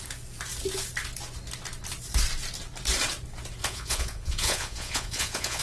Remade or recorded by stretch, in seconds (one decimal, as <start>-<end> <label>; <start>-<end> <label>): 0.0-3.6 recorded; 3.6-5.6 remade